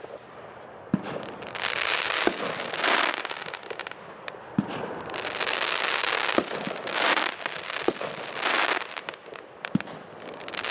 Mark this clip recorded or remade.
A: recorded